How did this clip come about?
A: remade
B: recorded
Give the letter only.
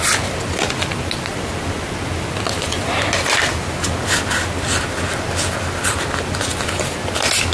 B